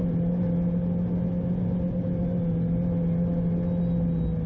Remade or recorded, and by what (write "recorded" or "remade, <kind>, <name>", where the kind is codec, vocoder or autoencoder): recorded